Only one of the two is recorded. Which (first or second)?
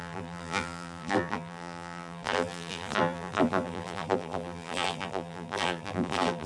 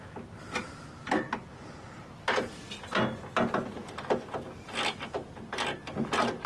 second